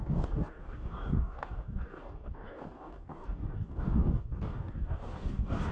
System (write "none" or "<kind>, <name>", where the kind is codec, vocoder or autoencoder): codec, DAC